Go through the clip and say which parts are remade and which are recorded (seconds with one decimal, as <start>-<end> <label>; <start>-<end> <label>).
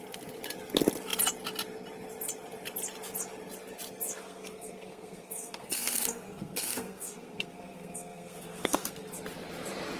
0.0-4.2 recorded; 4.2-9.1 remade; 9.1-10.0 recorded